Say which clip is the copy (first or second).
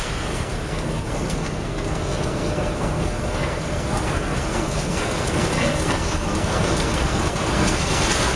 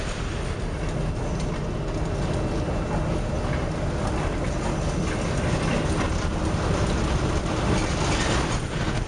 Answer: first